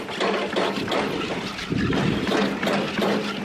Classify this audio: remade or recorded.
recorded